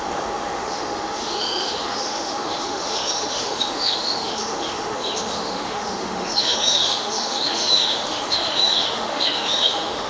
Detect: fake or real fake